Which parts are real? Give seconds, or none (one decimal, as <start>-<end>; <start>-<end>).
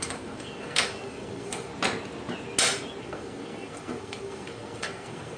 1.7-3.0